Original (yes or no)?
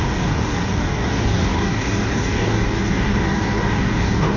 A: no